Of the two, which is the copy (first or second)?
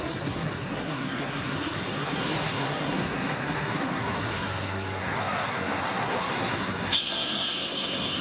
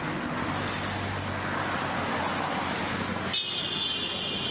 first